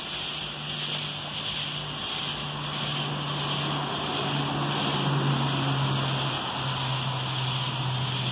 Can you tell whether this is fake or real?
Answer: real